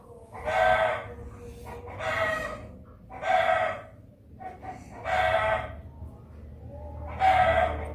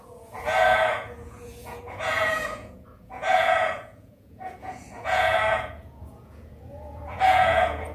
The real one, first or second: first